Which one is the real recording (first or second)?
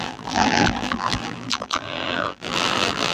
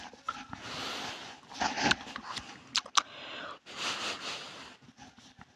second